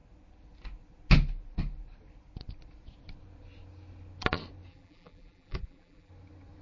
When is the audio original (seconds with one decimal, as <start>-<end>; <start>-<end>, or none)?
0.0-4.7; 6.1-6.6